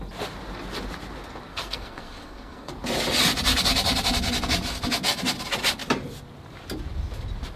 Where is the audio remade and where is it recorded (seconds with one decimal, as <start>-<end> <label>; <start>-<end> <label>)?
0.0-1.5 recorded; 1.5-2.7 remade; 2.7-7.6 recorded